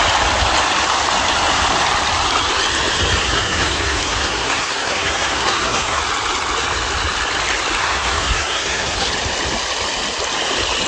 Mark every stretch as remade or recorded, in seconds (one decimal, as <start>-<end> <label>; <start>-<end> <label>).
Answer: 0.0-3.2 recorded; 3.2-6.0 remade; 6.0-7.8 recorded; 7.8-9.1 remade; 9.1-10.9 recorded

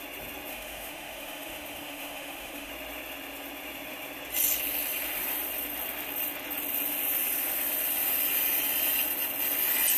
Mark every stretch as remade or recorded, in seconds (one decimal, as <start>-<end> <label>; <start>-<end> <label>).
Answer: 0.0-0.5 recorded; 0.5-2.7 remade; 2.7-10.0 recorded

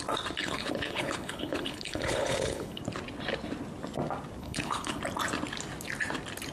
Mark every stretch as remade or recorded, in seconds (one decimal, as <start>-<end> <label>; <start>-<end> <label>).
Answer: 0.0-0.4 recorded; 0.4-2.8 remade; 2.8-4.4 recorded; 4.4-5.0 remade; 5.0-6.5 recorded

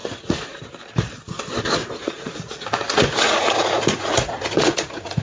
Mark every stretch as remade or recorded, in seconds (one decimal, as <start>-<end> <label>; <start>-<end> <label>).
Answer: 0.0-0.6 remade; 0.6-1.8 recorded; 1.8-5.2 remade

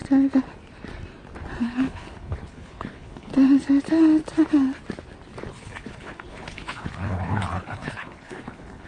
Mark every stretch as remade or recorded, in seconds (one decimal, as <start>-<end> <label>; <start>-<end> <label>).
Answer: 0.0-1.6 recorded; 1.6-3.3 remade; 3.3-5.5 recorded; 5.5-8.9 remade